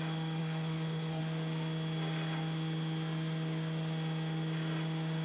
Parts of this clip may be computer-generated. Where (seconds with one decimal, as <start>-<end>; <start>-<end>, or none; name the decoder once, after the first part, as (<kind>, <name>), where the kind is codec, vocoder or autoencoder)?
0.4-1.2 (codec, SNAC)